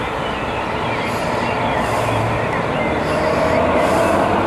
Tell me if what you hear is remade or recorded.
recorded